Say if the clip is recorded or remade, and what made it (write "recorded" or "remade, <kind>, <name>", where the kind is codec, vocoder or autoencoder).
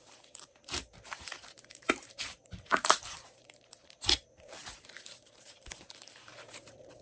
remade, vocoder, BigVGAN v2